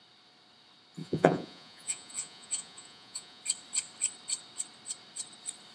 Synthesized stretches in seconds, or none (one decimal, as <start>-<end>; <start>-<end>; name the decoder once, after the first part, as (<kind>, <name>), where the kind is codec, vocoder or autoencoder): 1.0-3.4 (vocoder, Vocos)